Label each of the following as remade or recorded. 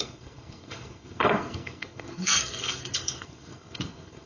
remade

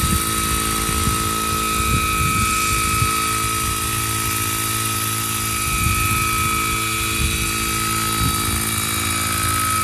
recorded